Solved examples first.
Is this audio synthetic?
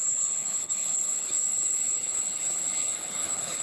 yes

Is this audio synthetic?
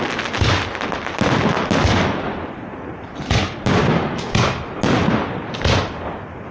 no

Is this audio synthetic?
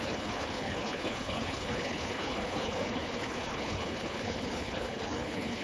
yes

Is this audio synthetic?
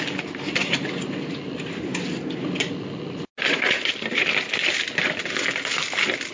no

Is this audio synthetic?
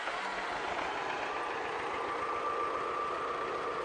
no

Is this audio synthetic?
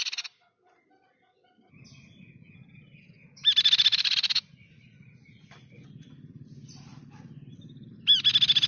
no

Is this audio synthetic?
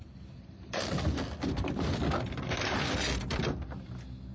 no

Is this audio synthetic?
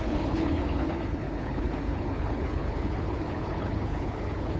yes